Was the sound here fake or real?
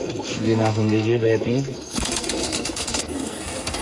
fake